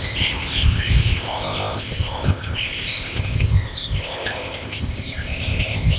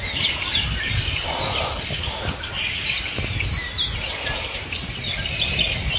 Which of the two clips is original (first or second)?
second